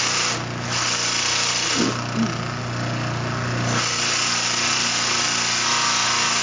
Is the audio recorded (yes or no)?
yes